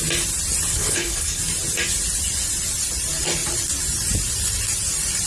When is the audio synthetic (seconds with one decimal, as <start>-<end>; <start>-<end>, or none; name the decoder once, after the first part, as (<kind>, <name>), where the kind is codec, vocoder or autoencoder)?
0.7-1.4 (codec, HILCodec)